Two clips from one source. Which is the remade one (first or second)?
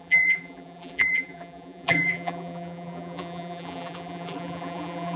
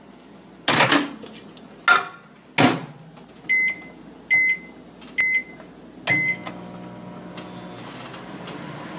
first